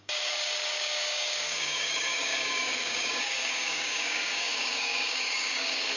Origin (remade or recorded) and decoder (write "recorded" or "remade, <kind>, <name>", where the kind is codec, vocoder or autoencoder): remade, codec, DAC